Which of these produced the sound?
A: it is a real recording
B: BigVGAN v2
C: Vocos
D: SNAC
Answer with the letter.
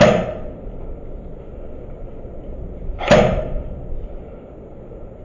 A